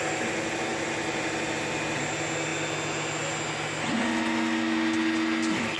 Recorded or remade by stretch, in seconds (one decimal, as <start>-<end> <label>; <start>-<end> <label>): 0.0-5.8 recorded